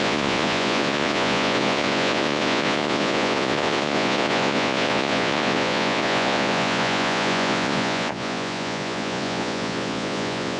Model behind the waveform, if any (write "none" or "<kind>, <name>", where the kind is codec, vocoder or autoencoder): vocoder, Vocos